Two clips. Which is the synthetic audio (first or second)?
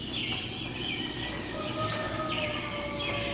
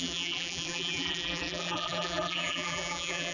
second